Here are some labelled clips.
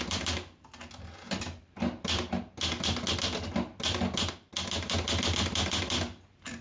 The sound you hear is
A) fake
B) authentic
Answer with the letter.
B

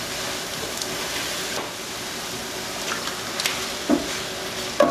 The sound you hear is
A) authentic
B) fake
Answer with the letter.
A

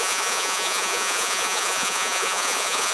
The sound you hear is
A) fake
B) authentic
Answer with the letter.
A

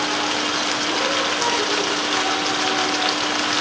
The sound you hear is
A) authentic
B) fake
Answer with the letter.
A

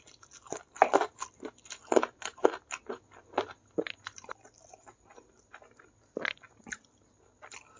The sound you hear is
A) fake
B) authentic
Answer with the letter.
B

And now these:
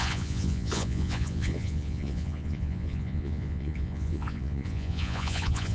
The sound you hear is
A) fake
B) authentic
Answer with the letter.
A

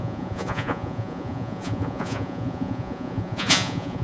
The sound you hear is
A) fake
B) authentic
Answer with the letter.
A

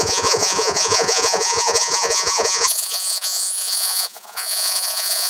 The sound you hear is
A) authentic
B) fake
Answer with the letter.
B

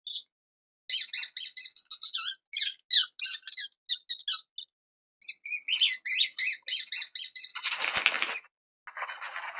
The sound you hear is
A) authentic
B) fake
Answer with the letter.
A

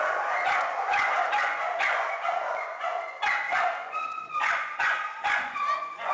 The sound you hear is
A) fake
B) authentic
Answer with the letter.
A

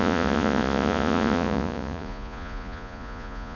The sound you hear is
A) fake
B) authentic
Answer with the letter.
A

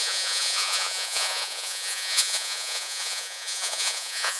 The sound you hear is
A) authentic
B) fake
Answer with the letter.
B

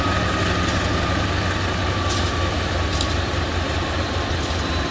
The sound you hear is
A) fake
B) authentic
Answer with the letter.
B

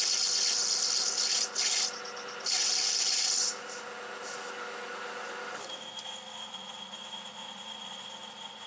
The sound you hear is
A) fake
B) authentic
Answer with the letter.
B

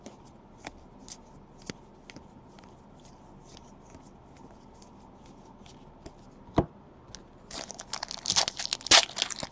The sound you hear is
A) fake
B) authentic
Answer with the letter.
B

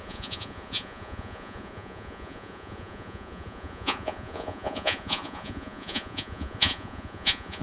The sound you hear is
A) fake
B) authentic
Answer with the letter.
A